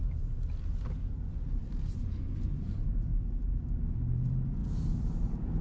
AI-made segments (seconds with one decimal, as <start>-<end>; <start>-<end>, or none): 1.6-2.7; 4.6-5.6